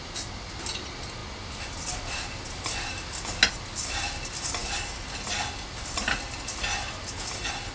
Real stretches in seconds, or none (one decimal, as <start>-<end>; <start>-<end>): 0.0-7.7